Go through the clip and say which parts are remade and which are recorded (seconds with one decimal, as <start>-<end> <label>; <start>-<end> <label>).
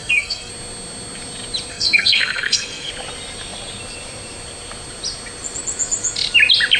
0.0-0.5 remade; 0.5-1.7 recorded; 1.7-2.9 remade; 2.9-6.8 recorded